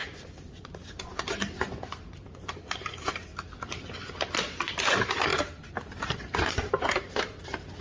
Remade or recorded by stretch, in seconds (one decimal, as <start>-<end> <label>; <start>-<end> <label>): 0.0-3.3 remade; 3.3-4.4 recorded; 4.4-7.8 remade